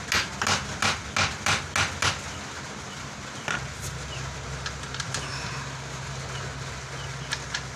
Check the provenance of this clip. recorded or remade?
recorded